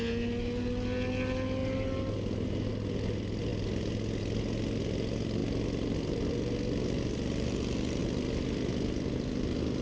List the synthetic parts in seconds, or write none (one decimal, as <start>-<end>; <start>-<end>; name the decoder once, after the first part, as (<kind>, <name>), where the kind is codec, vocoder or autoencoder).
none